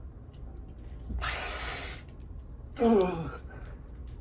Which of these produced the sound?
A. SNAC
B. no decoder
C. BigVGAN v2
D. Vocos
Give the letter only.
B